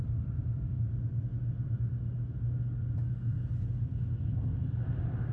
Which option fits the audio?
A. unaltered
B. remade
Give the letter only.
A